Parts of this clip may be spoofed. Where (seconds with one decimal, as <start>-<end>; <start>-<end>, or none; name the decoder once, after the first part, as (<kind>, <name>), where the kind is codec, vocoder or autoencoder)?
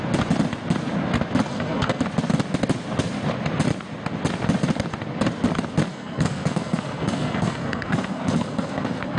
1.5-2.0 (codec, SNAC); 5.9-9.2